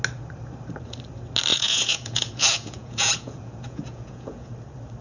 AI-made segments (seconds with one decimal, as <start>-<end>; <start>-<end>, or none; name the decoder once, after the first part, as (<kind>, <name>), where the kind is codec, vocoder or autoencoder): 1.5-4.5 (vocoder, Vocos)